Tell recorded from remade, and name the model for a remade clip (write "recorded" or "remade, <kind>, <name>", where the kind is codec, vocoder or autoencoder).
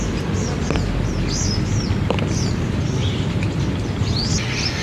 recorded